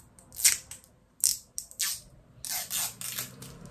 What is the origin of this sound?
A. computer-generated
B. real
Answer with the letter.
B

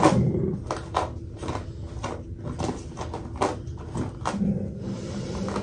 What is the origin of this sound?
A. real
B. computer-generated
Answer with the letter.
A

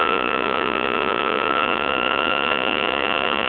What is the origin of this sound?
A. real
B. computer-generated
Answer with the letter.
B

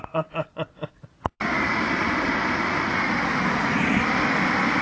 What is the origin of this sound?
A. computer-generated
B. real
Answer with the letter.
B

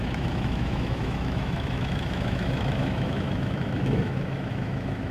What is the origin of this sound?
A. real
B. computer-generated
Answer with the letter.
B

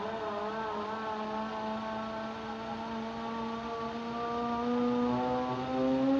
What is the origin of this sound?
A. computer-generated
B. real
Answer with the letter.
B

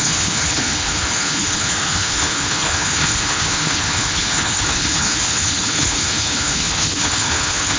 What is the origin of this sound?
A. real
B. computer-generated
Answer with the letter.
B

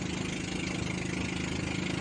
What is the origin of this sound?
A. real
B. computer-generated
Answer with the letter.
A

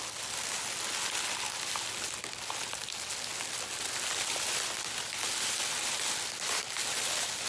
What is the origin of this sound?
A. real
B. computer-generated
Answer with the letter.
A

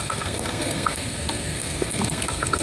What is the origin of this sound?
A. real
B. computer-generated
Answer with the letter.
B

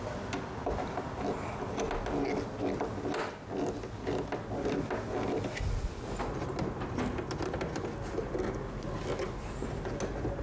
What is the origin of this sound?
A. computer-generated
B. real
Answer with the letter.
B